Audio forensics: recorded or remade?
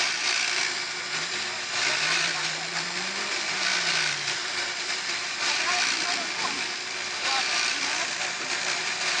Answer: remade